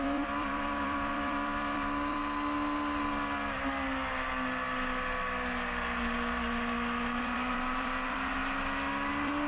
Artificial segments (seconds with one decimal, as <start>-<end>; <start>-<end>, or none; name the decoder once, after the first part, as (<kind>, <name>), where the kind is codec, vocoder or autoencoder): 0.0-2.2 (vocoder, BigVGAN v2); 7.2-8.4; 9.1-9.5